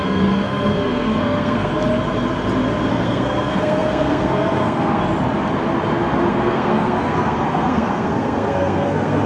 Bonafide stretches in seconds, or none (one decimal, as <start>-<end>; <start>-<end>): 1.7-2.9; 5.0-6.3